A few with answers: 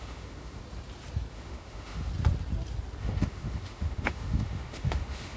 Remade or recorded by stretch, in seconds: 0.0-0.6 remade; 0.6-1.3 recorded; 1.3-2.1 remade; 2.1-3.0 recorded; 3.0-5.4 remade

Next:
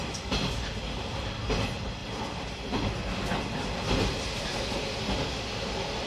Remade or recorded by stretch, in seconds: 0.0-6.1 recorded

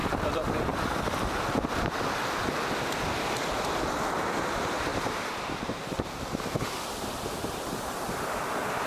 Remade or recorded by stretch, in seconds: 0.0-1.0 remade; 1.0-4.9 recorded; 4.9-6.4 remade; 6.4-8.9 recorded

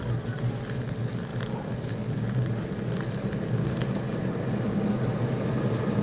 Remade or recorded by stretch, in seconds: 0.0-6.0 recorded